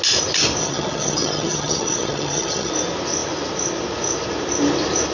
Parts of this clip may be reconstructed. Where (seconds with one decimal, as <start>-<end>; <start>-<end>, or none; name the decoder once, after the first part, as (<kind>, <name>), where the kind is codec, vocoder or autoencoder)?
0.6-2.7 (vocoder, HiFi-GAN)